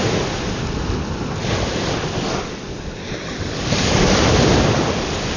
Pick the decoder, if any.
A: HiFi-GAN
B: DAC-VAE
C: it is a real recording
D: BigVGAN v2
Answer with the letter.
C